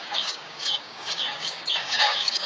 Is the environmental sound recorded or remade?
remade